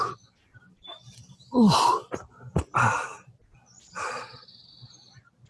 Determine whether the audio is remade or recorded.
recorded